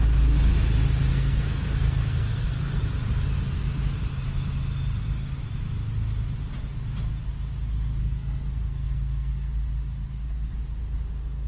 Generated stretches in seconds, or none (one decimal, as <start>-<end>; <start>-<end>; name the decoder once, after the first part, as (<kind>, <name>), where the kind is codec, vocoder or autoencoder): 1.1-2.8 (codec, SNAC); 8.0-9.5